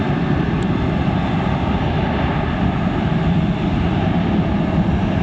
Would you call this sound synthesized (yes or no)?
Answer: no